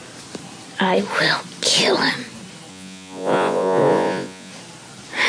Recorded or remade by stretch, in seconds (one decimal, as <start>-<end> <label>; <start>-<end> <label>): 0.0-2.7 recorded; 2.7-4.5 remade; 4.5-5.3 recorded